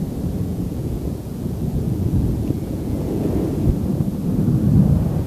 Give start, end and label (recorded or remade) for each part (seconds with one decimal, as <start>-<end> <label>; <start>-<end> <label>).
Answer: 0.0-0.5 recorded; 0.5-3.3 remade; 3.3-5.3 recorded